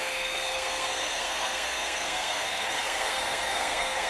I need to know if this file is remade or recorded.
remade